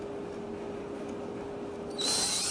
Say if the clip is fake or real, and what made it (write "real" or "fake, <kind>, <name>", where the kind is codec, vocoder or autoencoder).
real